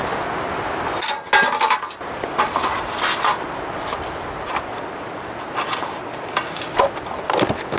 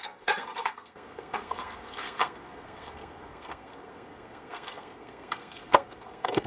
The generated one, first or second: second